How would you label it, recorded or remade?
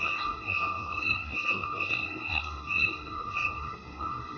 remade